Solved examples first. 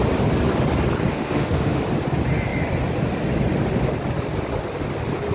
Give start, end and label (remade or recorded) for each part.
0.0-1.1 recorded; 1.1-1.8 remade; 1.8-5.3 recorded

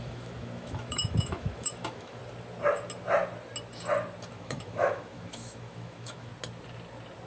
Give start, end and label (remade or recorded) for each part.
0.0-2.2 remade; 2.2-4.3 recorded; 4.3-6.3 remade; 6.3-7.3 recorded

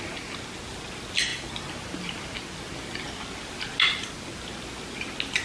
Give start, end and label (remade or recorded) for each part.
0.0-5.4 recorded

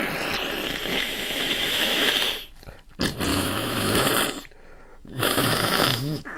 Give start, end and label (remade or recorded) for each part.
0.0-0.9 recorded; 0.9-2.1 remade; 2.1-3.3 recorded; 3.3-4.1 remade; 4.1-4.9 recorded; 4.9-6.4 remade

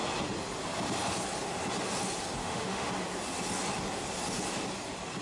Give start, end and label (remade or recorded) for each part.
0.0-2.4 recorded; 2.4-2.9 remade; 2.9-5.2 recorded

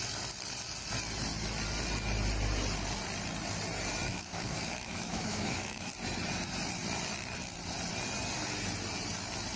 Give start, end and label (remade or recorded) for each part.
0.0-4.1 recorded; 4.1-5.9 remade; 5.9-9.6 recorded